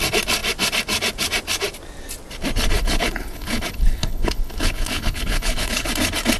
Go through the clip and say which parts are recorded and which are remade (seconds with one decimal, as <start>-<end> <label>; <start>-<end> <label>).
0.0-2.8 recorded; 2.8-5.9 remade; 5.9-6.4 recorded